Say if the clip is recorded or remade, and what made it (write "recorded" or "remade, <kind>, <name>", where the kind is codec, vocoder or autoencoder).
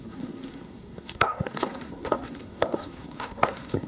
remade, codec, SNAC